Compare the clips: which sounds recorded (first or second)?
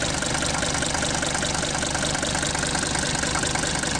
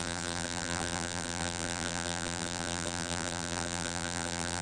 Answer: first